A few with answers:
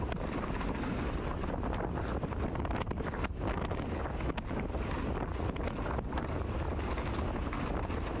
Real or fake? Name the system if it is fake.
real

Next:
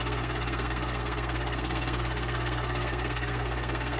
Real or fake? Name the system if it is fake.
fake, codec, SNAC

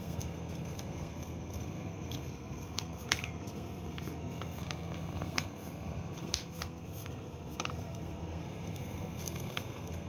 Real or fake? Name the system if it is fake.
fake, codec, SNAC